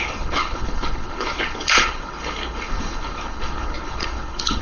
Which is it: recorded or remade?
remade